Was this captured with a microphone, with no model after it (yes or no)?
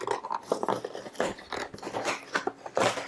yes